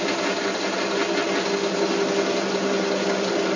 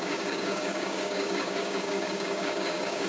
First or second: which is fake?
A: second